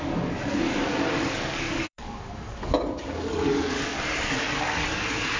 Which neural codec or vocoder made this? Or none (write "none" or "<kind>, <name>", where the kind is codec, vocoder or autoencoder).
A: codec, DAC